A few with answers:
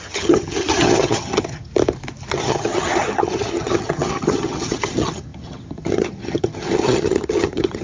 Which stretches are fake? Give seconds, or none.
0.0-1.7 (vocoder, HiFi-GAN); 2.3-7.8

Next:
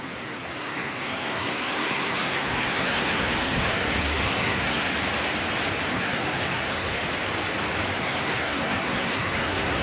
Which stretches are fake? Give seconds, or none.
0.0-4.9 (codec, SNAC); 5.9-7.0; 8.0-9.8

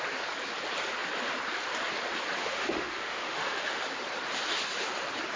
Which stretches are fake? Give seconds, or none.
2.4-3.8 (autoencoder, DAC-VAE)

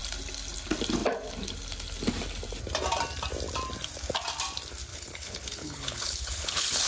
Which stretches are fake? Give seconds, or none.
4.9-6.9 (codec, HILCodec)

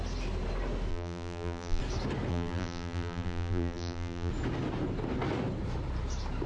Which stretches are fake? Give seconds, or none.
0.9-1.8 (vocoder, BigVGAN v2); 2.3-4.3

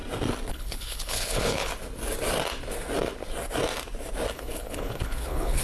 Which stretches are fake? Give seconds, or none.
0.5-1.7 (codec, HILCodec); 4.3-5.6